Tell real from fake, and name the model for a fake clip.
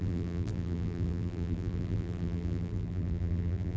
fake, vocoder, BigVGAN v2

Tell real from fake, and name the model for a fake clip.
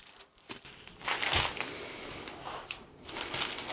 real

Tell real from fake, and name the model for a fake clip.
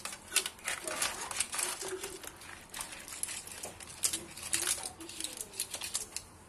real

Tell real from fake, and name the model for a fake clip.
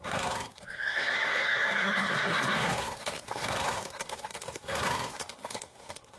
fake, codec, SNAC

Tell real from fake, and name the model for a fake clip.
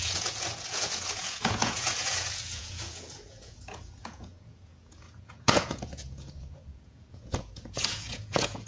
fake, vocoder, Vocos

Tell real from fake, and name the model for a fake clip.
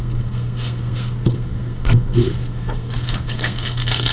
fake, codec, SNAC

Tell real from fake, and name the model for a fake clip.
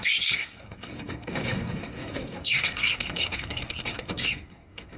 fake, codec, SNAC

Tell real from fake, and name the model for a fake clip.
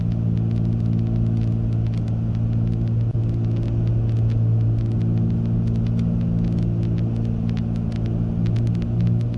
real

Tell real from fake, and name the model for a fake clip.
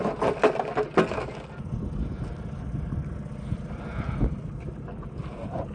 real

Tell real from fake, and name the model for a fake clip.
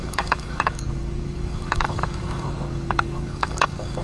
fake, codec, DAC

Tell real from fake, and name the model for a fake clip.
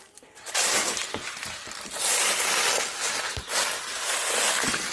real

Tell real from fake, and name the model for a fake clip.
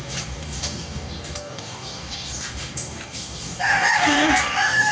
fake, codec, DAC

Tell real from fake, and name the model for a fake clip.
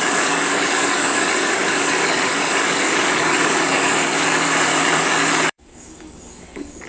fake, codec, DAC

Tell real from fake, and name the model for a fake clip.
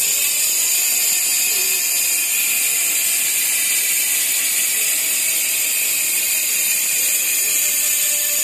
real